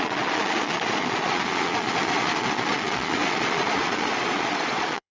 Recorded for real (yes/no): no